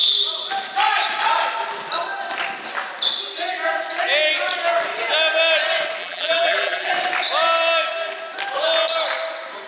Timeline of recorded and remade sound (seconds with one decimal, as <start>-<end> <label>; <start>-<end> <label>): 0.0-6.0 recorded; 6.0-6.9 remade; 6.9-9.7 recorded